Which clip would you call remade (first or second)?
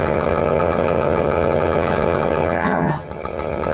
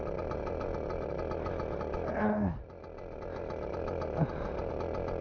first